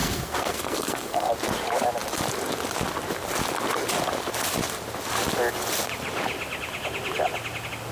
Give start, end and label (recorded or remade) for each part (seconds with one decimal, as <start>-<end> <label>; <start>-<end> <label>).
0.0-1.3 remade; 1.3-7.9 recorded